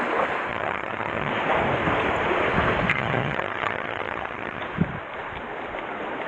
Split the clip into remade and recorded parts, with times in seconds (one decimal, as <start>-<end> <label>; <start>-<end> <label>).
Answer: 0.0-0.5 recorded; 0.5-1.3 remade; 1.3-2.9 recorded; 2.9-4.6 remade; 4.6-6.3 recorded